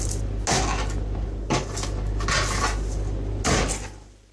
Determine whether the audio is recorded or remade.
recorded